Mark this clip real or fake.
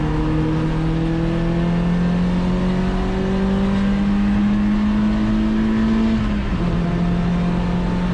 real